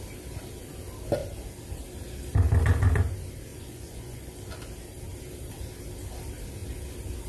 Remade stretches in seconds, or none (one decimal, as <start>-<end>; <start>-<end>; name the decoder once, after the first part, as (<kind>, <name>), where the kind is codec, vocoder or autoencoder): 3.5-4.4 (vocoder, Vocos)